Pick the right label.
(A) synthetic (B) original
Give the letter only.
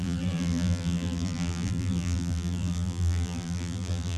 A